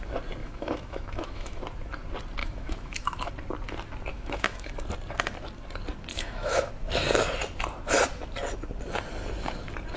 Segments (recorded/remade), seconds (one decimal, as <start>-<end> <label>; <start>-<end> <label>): 0.0-0.4 recorded; 0.4-1.6 remade; 1.6-2.4 recorded; 2.4-3.3 remade; 3.3-4.1 recorded; 4.1-4.7 remade; 4.7-6.1 recorded; 6.1-6.7 remade; 6.7-10.0 recorded